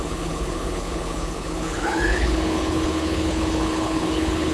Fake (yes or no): yes